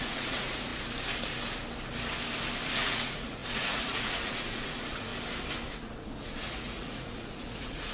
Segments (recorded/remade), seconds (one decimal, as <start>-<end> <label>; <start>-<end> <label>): 0.0-0.7 remade; 0.7-2.8 recorded; 2.8-5.1 remade; 5.1-5.7 recorded; 5.7-7.9 remade

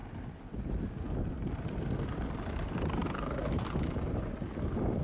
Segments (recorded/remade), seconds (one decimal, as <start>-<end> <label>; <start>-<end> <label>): 0.0-5.0 recorded

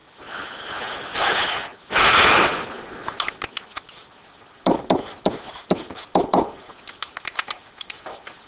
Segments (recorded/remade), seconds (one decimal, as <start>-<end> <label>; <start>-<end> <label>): 0.0-8.5 recorded

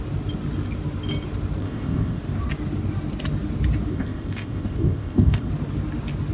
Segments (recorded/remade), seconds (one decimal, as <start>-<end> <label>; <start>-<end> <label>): 0.0-1.6 recorded; 1.6-2.2 remade; 2.2-3.9 recorded; 3.9-5.5 remade; 5.5-6.3 recorded

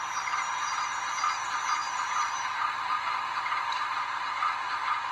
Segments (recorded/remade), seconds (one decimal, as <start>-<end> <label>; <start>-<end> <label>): 0.0-5.1 recorded

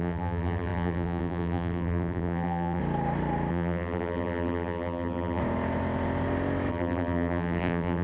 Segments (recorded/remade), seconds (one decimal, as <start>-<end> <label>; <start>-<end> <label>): 0.0-2.8 remade; 2.8-3.5 recorded; 3.5-5.4 remade; 5.4-6.7 recorded; 6.7-8.0 remade